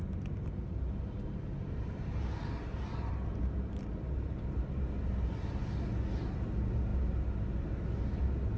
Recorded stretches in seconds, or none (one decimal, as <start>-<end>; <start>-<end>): 0.0-8.6